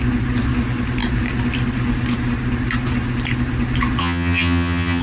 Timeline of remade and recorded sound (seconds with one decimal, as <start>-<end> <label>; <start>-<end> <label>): 0.0-4.0 recorded; 4.0-5.0 remade

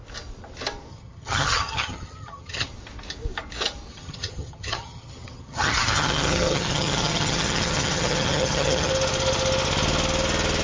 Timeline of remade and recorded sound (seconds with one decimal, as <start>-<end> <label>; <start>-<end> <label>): 0.0-0.9 recorded; 0.9-2.7 remade; 2.7-3.9 recorded; 3.9-8.9 remade; 8.9-10.6 recorded

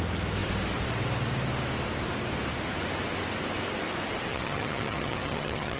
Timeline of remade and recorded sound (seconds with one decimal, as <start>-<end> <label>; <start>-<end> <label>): 0.0-4.3 recorded; 4.3-5.8 remade